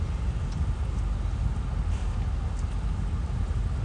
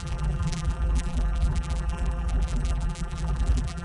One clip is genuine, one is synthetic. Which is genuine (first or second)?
first